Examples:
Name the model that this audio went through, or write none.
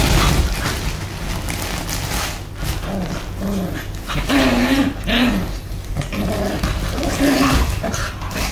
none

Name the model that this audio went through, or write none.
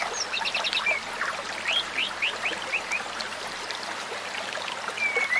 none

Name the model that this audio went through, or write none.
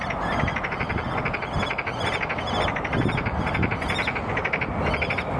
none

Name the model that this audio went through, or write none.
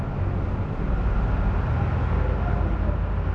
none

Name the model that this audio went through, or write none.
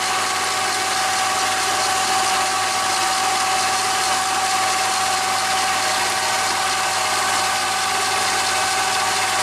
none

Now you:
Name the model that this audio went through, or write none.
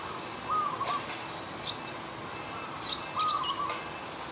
none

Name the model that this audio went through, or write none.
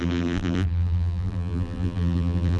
vocoder, BigVGAN v2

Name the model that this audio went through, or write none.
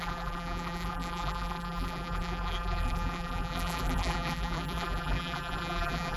vocoder, BigVGAN v2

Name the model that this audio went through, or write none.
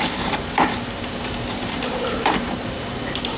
vocoder, BigVGAN v2